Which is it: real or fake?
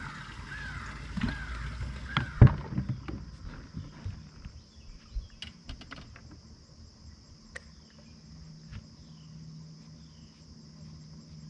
real